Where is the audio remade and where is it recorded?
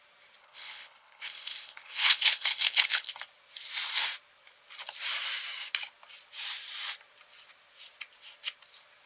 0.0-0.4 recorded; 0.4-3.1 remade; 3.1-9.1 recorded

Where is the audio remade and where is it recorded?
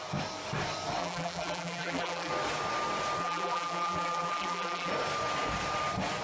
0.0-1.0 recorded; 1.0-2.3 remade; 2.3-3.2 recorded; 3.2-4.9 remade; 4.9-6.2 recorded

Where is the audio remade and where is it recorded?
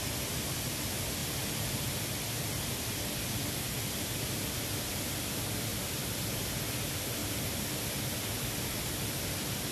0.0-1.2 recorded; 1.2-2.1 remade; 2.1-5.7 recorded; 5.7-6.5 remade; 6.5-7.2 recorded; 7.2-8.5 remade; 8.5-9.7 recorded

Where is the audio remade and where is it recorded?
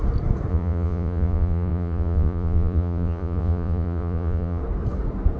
0.0-0.5 recorded; 0.5-4.6 remade; 4.6-5.4 recorded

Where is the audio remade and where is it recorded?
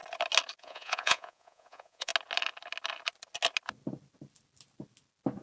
0.0-0.6 recorded; 0.6-2.1 remade; 2.1-5.4 recorded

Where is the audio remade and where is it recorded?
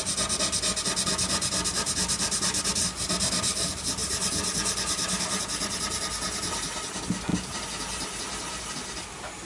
0.0-9.4 recorded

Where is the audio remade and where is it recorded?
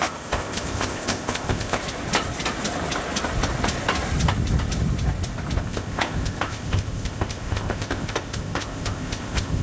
0.0-1.8 remade; 1.8-5.6 recorded; 5.6-9.6 remade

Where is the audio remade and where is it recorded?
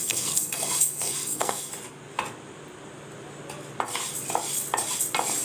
0.0-1.7 remade; 1.7-5.4 recorded